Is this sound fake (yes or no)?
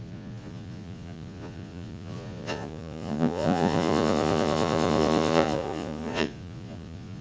yes